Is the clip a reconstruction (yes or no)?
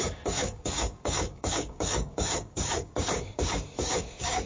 yes